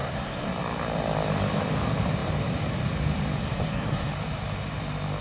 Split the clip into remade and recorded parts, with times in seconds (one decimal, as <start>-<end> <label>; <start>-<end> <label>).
0.0-0.5 remade; 0.5-3.4 recorded; 3.4-4.1 remade; 4.1-5.2 recorded